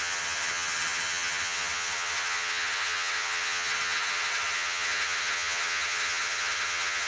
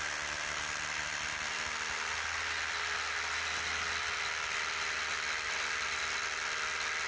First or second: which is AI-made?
first